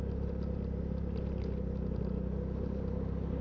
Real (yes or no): yes